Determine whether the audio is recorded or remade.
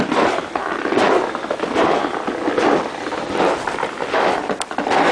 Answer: recorded